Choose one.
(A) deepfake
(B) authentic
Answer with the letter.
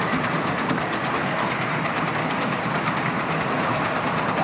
B